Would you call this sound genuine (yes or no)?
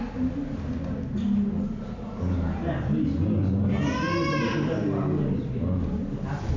yes